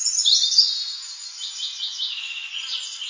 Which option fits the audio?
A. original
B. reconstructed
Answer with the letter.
A